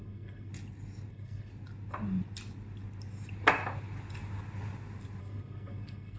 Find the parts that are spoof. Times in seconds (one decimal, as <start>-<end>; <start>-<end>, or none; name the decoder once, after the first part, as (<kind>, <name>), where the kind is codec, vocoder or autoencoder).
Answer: 0.0-0.5 (codec, SNAC); 1.1-1.5; 5.2-6.2